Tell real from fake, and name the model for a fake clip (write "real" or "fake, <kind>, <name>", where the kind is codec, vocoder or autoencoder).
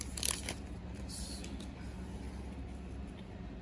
real